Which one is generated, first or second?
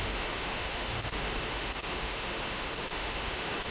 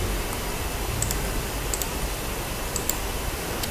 first